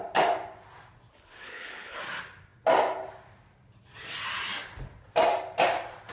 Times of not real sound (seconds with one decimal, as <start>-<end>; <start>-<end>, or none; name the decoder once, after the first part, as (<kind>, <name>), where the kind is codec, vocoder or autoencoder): 1.1-2.0 (codec, HILCodec)